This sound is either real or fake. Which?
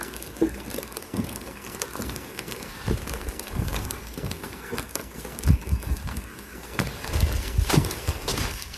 fake